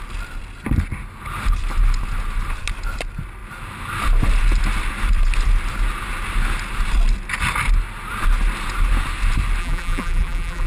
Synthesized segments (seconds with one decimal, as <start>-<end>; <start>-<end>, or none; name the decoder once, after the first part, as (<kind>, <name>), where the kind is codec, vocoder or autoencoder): 9.6-10.7 (vocoder, BigVGAN v2)